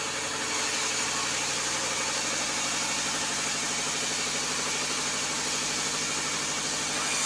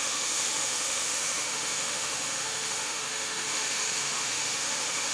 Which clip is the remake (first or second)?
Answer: second